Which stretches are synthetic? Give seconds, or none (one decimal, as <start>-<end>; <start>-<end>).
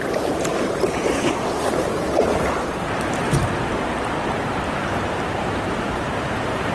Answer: 0.0-2.0; 2.6-3.4; 5.0-6.7